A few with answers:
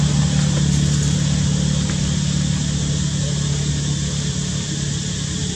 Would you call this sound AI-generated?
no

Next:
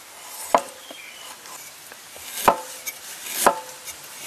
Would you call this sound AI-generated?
no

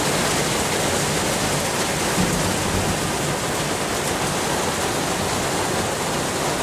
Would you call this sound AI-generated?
no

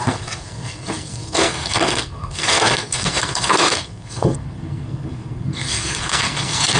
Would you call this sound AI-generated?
yes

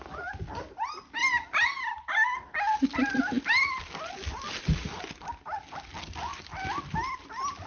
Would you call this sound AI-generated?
no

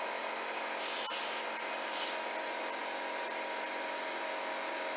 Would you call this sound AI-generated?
no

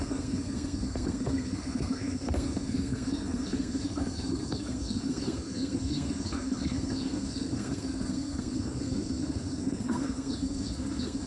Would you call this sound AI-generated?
yes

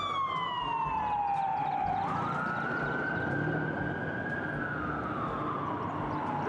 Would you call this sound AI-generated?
no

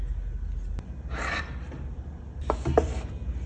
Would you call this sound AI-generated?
no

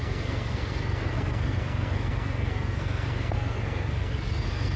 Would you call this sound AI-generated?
yes